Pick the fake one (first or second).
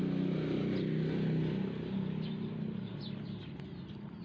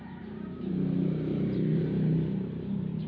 second